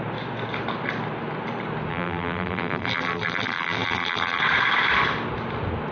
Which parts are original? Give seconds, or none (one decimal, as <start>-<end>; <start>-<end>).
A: 0.0-1.9; 4.4-5.9